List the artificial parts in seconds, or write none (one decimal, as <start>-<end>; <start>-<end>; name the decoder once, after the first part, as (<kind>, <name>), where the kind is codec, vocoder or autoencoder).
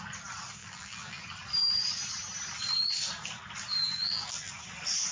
0.6-1.2 (vocoder, BigVGAN v2); 3.7-4.5